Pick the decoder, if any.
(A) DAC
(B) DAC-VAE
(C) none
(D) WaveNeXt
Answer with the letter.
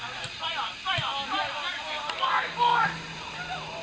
C